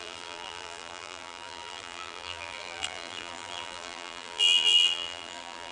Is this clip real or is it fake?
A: fake